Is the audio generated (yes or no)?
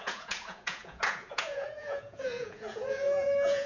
yes